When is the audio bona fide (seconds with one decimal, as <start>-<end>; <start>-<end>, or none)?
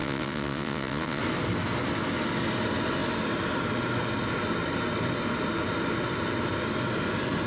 1.2-7.5